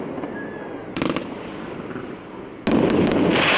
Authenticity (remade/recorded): recorded